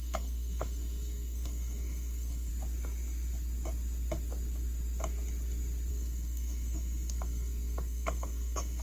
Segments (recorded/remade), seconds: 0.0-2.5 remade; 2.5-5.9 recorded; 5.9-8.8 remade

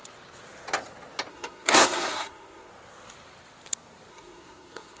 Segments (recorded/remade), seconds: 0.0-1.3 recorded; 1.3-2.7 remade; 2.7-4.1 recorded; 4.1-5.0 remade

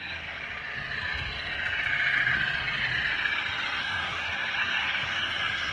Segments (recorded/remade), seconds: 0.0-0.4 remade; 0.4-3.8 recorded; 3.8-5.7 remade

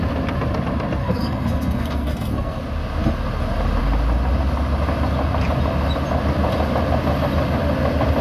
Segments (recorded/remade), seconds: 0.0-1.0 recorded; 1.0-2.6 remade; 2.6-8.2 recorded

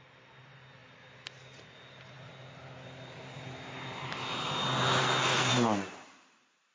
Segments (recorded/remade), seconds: 0.0-5.0 recorded; 5.0-5.5 remade; 5.5-6.7 recorded